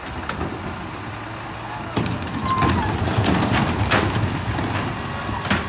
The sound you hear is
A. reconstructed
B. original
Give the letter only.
B